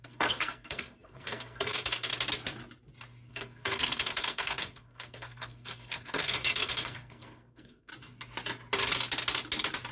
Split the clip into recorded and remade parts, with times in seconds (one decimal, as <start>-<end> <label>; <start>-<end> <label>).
0.0-2.1 remade; 2.1-3.3 recorded; 3.3-7.9 remade; 7.9-9.9 recorded